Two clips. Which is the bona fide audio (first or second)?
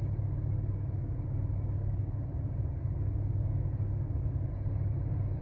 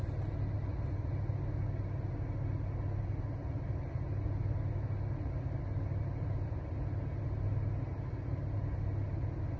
second